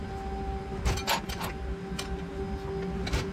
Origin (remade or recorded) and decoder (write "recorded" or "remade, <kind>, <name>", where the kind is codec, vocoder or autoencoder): recorded